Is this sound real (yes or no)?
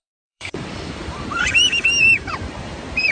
no